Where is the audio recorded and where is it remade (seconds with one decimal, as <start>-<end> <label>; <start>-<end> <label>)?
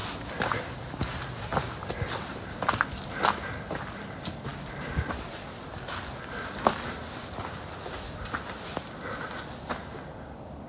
0.0-10.7 recorded